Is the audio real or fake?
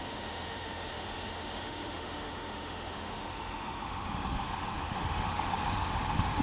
fake